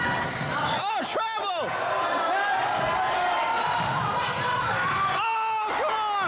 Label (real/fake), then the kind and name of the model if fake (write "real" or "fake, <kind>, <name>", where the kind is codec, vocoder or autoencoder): real